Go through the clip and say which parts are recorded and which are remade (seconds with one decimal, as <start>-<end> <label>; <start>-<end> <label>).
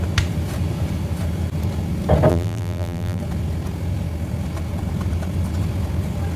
0.0-2.3 recorded; 2.3-3.2 remade; 3.2-6.4 recorded